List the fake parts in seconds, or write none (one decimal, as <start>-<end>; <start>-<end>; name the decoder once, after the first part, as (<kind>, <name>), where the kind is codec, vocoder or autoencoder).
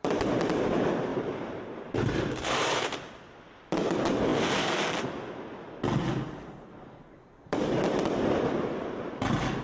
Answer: 1.1-3.1 (vocoder, BigVGAN v2)